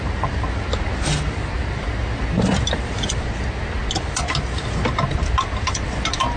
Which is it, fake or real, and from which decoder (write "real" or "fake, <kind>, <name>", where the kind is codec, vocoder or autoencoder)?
real